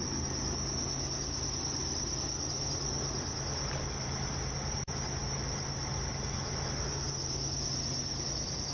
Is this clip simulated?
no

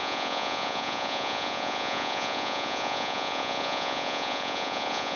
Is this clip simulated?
yes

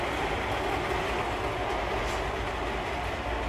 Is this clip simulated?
no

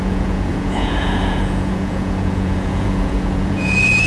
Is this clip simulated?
yes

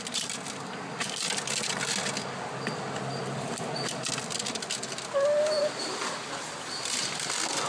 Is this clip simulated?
no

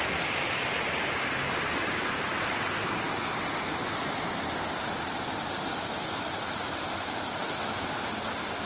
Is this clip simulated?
no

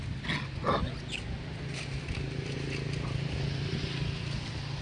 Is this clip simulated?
no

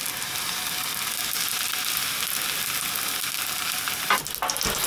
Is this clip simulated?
no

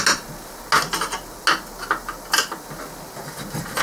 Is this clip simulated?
no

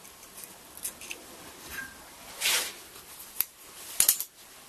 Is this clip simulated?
no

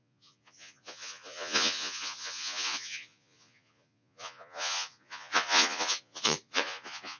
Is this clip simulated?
yes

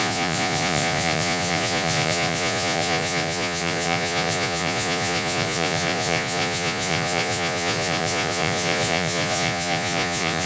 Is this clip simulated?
yes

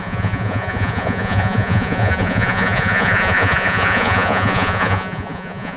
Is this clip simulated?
yes